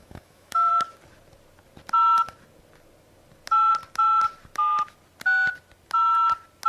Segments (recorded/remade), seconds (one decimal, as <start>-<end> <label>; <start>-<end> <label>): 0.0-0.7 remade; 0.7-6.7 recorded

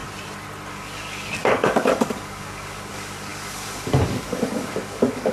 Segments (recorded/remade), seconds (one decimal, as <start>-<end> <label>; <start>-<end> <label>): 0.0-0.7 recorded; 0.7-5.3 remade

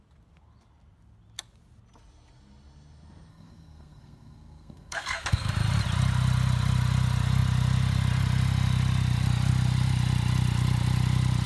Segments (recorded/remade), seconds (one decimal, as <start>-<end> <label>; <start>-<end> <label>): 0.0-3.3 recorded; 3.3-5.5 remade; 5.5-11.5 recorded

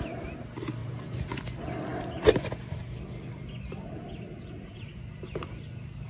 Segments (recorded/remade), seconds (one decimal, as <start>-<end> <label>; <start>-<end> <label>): 0.0-0.8 recorded; 0.8-1.4 remade; 1.4-6.1 recorded

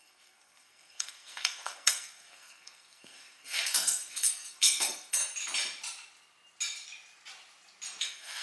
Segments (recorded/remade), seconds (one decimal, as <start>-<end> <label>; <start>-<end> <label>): 0.0-5.2 remade; 5.2-8.0 recorded; 8.0-8.4 remade

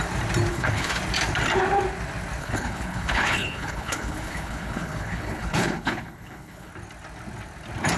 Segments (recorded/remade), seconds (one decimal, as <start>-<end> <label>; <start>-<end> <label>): 0.0-0.5 recorded; 0.5-1.0 remade; 1.0-2.4 recorded; 2.4-6.7 remade; 6.7-8.0 recorded

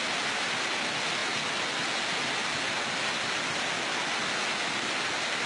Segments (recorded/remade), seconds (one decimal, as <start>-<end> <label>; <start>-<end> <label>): 0.0-5.5 recorded

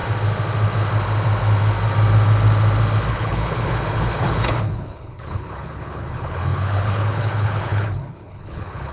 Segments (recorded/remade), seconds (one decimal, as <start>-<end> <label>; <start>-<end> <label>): 0.0-3.1 recorded; 3.1-8.9 remade